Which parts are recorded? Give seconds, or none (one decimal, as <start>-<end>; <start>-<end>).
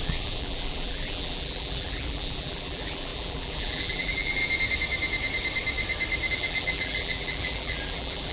4.4-6.3